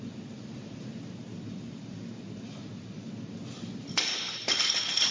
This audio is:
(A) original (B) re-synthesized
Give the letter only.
A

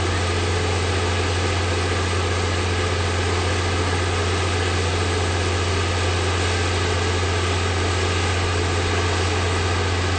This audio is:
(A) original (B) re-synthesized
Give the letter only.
A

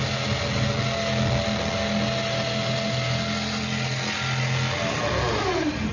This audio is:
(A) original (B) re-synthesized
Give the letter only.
A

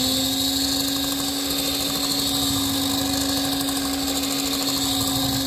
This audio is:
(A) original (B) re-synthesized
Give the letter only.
A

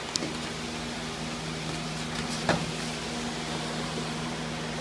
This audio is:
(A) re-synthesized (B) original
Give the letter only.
B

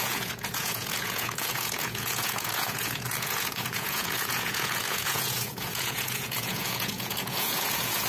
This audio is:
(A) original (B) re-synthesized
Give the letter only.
B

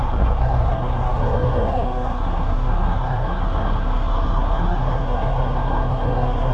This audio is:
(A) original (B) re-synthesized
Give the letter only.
B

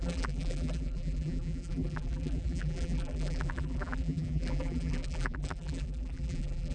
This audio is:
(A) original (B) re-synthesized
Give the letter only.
B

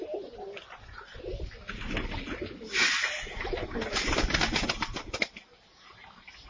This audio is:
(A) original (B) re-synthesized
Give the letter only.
A